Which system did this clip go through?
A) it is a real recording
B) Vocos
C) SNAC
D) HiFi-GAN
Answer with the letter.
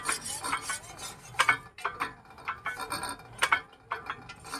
A